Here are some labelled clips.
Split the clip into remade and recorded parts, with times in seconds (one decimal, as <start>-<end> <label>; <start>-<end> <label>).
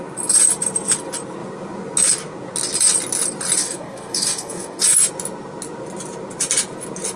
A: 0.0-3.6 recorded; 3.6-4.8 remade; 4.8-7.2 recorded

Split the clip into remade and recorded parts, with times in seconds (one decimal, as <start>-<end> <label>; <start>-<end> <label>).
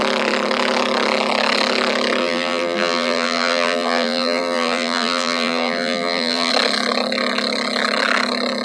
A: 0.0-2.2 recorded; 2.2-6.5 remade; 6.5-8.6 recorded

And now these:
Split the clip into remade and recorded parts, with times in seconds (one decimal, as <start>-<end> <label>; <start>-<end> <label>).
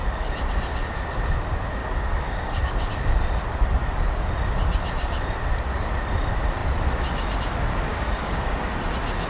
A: 0.0-1.8 recorded; 1.8-2.9 remade; 2.9-7.9 recorded; 7.9-8.7 remade; 8.7-9.3 recorded